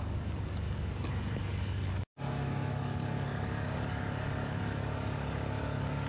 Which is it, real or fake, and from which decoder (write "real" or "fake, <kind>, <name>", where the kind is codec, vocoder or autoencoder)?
fake, codec, DAC